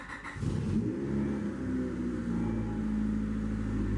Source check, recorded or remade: recorded